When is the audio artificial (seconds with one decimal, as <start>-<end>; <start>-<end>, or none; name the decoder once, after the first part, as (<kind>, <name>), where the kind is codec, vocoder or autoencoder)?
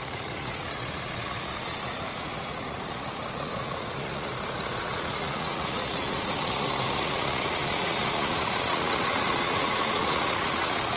0.0-4.3 (vocoder, Vocos); 4.8-11.0